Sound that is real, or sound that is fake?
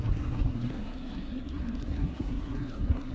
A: fake